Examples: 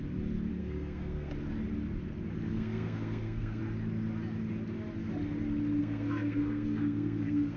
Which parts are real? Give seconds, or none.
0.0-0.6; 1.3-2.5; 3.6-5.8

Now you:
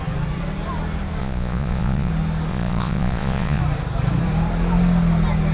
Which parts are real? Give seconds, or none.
0.0-1.2; 2.1-2.5; 3.6-5.5

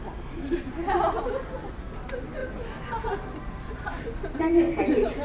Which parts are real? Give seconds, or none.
0.0-5.2